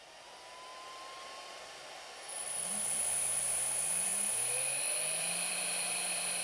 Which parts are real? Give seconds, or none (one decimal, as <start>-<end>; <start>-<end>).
0.7-2.3; 4.1-5.2